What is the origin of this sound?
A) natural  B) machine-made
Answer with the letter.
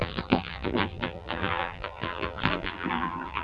B